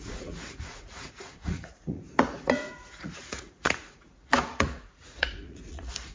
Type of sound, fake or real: fake